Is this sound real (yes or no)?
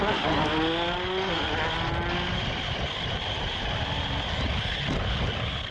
yes